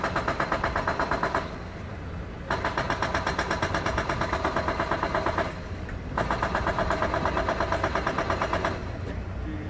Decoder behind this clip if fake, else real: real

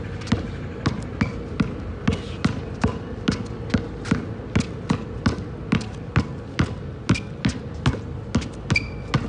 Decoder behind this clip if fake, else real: real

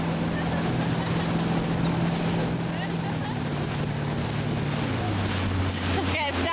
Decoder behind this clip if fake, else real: real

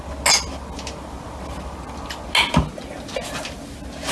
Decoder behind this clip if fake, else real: real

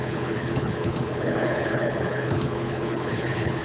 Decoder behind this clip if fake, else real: fake, codec, HILCodec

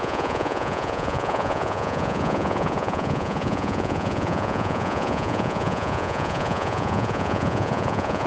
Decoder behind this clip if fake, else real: fake, vocoder, Vocos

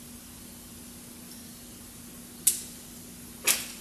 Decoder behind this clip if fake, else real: real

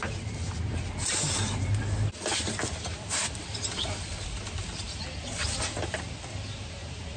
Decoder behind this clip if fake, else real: real